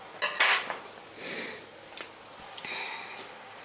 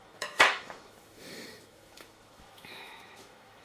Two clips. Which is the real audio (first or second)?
first